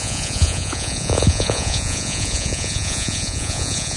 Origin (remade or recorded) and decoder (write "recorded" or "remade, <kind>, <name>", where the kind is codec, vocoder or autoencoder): remade, vocoder, Vocos